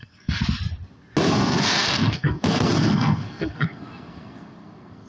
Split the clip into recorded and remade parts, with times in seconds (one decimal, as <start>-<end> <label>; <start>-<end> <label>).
0.0-0.4 remade; 0.4-1.3 recorded; 1.3-5.1 remade